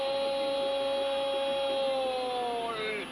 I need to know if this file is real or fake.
real